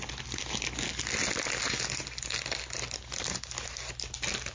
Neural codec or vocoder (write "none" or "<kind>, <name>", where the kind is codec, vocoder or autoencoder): none